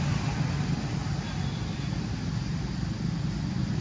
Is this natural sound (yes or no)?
yes